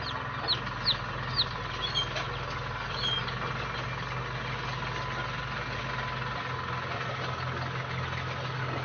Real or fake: real